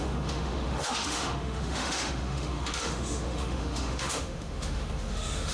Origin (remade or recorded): remade